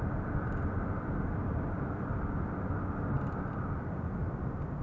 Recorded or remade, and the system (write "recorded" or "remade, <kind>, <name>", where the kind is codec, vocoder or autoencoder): remade, vocoder, BigVGAN v2